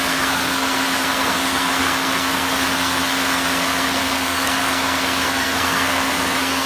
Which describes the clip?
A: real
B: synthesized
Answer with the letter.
B